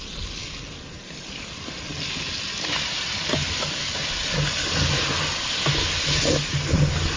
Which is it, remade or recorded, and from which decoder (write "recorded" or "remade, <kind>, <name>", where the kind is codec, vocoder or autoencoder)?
recorded